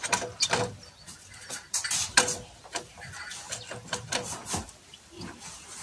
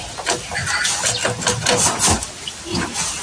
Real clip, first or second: second